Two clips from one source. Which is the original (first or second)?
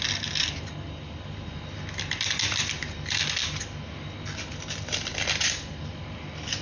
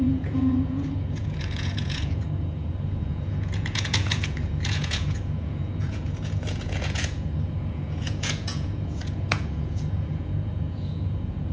first